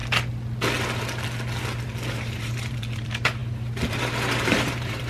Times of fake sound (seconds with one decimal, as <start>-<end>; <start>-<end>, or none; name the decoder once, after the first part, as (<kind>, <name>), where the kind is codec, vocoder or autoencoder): 2.1-3.4 (vocoder, BigVGAN v2); 3.9-5.1

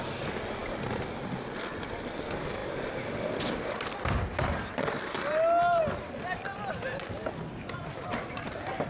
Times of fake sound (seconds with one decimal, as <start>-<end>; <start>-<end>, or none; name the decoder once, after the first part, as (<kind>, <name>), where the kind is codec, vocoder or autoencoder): 0.6-1.2 (vocoder, BigVGAN v2)